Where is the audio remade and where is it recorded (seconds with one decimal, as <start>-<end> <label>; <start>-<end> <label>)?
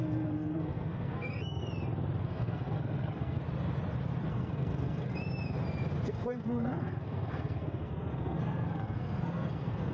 0.0-1.6 remade; 1.6-2.2 recorded; 2.2-3.4 remade; 3.4-4.3 recorded; 4.3-5.1 remade; 5.1-6.1 recorded; 6.1-9.9 remade